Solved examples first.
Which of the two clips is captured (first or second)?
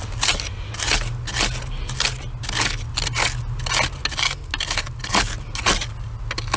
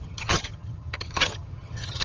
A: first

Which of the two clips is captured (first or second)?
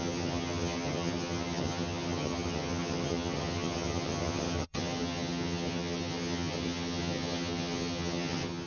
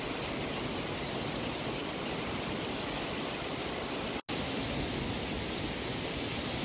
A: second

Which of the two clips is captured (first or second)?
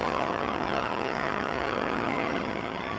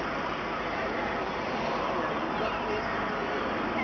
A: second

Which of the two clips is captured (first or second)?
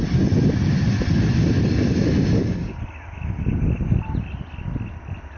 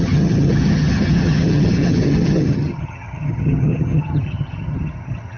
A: first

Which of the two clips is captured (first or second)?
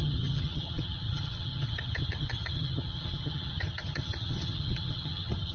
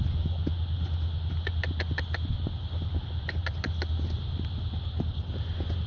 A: second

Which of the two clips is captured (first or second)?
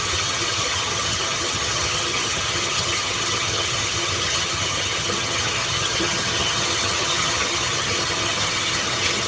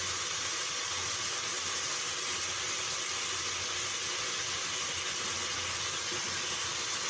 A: second